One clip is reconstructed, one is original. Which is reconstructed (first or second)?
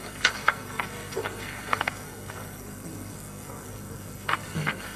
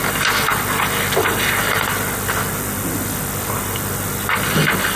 first